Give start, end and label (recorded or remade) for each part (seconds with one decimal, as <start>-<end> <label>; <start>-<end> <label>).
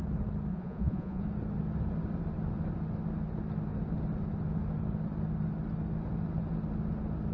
0.0-0.5 recorded; 0.5-1.2 remade; 1.2-7.3 recorded